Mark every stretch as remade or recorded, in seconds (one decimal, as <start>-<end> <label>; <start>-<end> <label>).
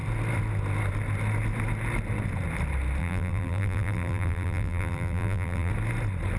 0.0-3.0 recorded; 3.0-5.7 remade; 5.7-6.4 recorded